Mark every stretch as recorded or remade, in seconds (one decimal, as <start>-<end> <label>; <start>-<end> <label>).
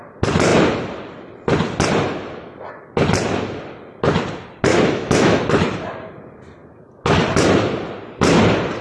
0.0-4.7 recorded; 4.7-5.4 remade; 5.4-8.8 recorded